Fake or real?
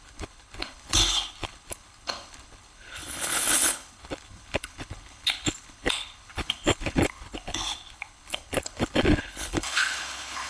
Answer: fake